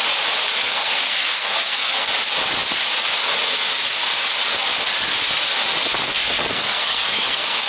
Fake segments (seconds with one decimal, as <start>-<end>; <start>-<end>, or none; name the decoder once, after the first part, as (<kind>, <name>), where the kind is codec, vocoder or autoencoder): 0.6-2.1 (codec, SNAC); 6.2-7.7